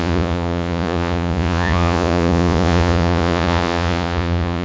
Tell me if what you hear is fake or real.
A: fake